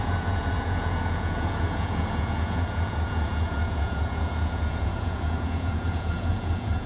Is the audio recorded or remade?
remade